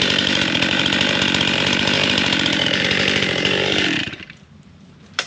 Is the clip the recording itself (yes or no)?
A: no